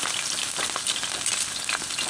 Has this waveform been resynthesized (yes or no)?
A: no